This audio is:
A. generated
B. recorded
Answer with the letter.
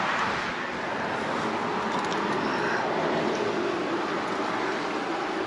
B